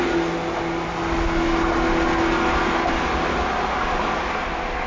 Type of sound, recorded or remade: recorded